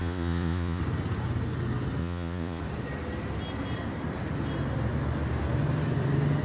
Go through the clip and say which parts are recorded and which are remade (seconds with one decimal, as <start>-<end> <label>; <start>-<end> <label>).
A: 0.0-0.8 remade; 0.8-2.0 recorded; 2.0-2.6 remade; 2.6-6.4 recorded